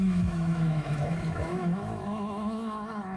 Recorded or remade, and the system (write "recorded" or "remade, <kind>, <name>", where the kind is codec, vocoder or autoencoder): remade, autoencoder, DAC-VAE